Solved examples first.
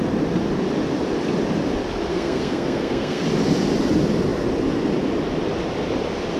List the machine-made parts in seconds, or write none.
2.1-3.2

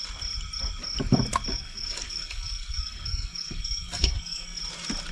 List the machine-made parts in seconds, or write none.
1.5-4.6

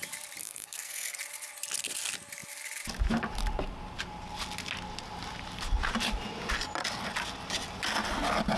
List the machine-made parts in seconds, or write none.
0.4-1.2